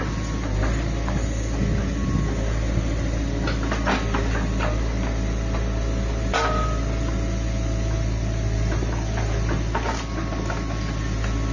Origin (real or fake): real